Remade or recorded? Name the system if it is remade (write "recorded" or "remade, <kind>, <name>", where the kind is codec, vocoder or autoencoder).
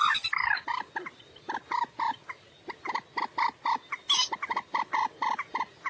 recorded